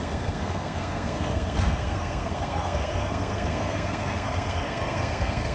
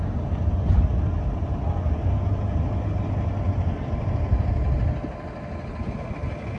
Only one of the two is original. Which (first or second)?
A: second